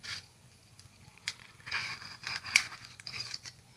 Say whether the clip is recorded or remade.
remade